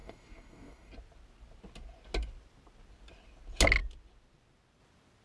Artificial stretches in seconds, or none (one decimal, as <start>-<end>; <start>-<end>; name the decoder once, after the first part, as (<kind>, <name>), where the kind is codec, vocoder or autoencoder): 0.0-0.9 (codec, DAC)